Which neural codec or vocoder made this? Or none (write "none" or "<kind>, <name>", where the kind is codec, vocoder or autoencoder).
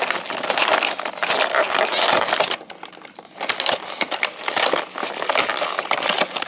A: none